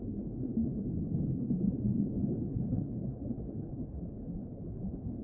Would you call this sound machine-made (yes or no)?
yes